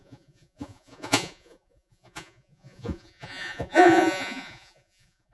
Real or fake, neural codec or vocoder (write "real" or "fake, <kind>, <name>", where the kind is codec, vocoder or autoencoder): fake, vocoder, Vocos